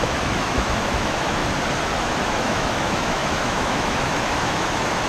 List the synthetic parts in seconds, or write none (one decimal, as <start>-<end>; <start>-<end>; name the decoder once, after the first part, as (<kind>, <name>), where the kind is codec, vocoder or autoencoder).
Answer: 0.0-1.4 (autoencoder, DAC-VAE); 2.0-5.1